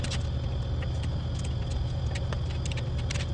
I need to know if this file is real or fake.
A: real